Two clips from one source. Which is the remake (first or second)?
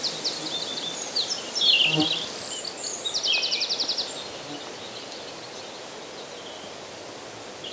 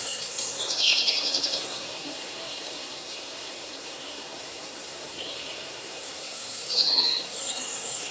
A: second